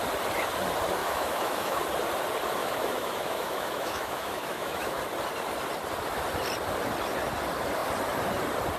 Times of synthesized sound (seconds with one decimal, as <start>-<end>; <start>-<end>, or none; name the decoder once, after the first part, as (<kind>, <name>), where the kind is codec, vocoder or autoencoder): 1.0-1.8 (autoencoder, DAC-VAE); 2.6-5.0